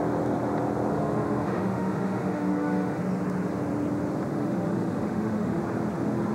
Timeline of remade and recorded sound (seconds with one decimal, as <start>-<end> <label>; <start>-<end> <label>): 0.0-0.9 recorded; 0.9-3.0 remade; 3.0-4.3 recorded; 4.3-5.6 remade; 5.6-6.3 recorded